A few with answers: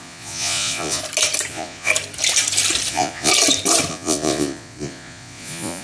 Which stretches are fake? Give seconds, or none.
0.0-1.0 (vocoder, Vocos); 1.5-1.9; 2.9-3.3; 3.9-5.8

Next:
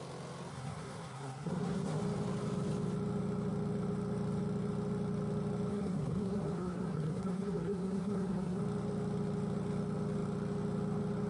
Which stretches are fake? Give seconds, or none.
0.5-2.0 (codec, SNAC); 5.7-8.6

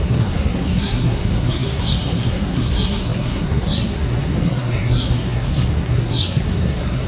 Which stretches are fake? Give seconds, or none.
0.0-7.1 (codec, SNAC)

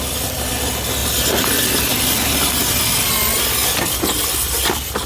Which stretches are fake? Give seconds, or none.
none